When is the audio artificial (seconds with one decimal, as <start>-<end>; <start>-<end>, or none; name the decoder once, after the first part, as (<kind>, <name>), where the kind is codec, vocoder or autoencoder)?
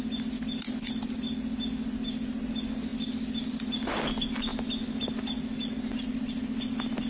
none